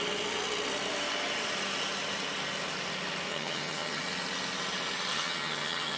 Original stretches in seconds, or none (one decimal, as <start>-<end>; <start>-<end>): 0.0-3.3; 4.0-5.1